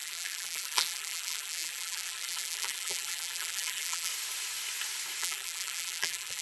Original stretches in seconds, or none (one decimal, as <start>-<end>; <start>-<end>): 4.1-5.2

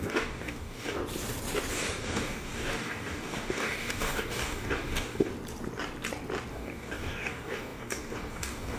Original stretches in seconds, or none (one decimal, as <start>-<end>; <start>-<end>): 1.0-1.7; 5.3-6.5